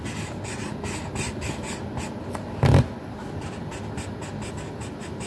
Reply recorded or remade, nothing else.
recorded